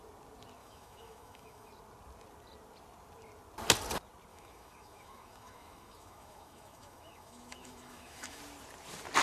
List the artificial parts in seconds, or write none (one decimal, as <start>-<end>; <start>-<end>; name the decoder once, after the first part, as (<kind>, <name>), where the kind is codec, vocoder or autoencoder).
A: 0.6-1.7 (autoencoder, DAC-VAE); 4.3-8.4